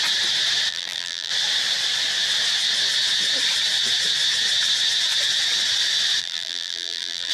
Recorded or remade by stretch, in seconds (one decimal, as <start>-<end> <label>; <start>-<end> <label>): 0.0-0.7 recorded; 0.7-1.3 remade; 1.3-6.2 recorded; 6.2-7.3 remade